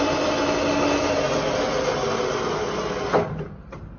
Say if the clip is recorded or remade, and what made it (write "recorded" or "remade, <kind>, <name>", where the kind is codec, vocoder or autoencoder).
recorded